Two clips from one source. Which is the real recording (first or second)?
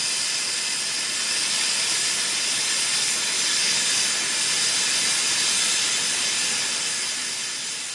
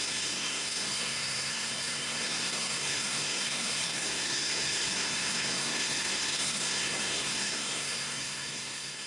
first